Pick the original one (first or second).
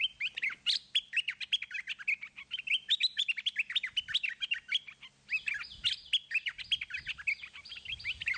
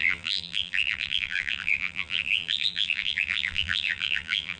first